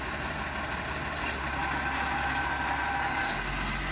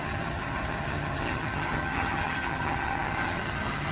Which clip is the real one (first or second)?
first